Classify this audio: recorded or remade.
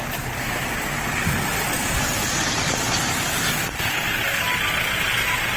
recorded